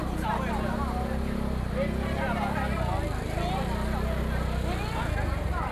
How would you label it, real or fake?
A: real